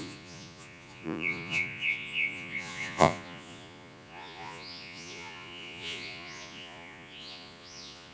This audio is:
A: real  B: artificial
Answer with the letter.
B